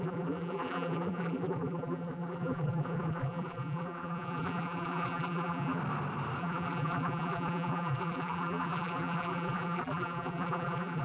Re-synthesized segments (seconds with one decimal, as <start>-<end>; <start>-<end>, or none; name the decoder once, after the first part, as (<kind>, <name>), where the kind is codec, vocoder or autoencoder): 0.0-5.8 (vocoder, BigVGAN v2); 6.4-11.0

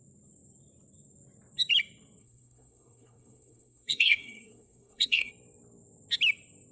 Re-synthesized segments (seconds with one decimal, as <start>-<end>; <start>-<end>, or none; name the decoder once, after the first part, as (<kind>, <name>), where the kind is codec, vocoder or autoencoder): 2.2-5.3 (codec, SNAC)

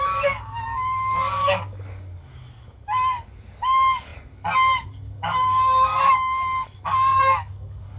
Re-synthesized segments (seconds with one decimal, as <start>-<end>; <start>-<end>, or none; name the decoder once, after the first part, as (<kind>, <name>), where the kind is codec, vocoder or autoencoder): 0.0-8.0 (codec, DAC)

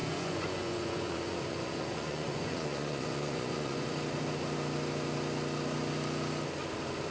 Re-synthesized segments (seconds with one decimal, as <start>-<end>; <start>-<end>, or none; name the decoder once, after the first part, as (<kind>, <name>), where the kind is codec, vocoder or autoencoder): 0.0-3.9 (vocoder, Vocos)

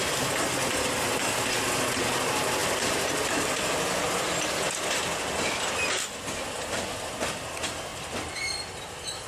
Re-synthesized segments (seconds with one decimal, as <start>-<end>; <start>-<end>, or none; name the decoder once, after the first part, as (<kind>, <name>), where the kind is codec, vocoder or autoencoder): none

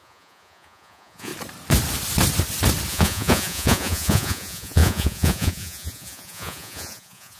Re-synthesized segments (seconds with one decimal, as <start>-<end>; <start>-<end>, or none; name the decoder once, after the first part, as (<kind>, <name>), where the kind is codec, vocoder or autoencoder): 0.0-1.3 (vocoder, Vocos); 2.9-7.4